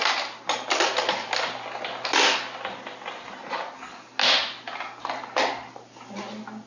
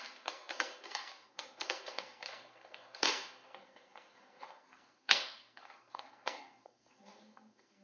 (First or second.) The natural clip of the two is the first